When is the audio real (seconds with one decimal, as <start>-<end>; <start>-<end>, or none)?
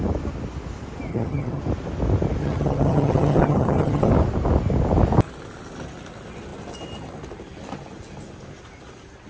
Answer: 0.0-1.1; 1.6-2.4; 4.1-9.3